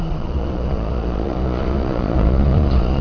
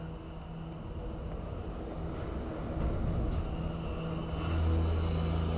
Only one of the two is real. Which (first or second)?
second